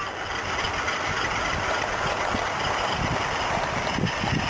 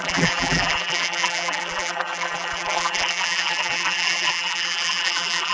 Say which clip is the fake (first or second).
second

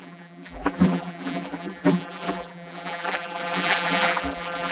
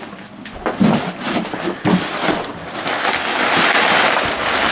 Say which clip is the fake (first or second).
first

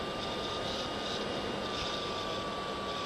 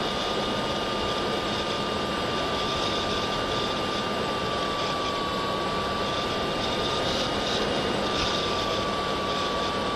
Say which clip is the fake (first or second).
second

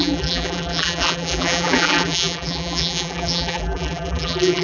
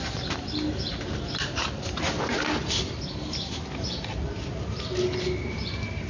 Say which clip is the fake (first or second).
first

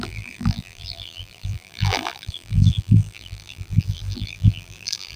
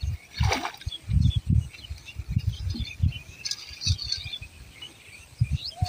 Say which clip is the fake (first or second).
first